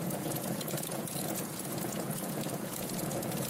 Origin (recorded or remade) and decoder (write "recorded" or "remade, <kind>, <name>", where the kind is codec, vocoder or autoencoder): remade, vocoder, Vocos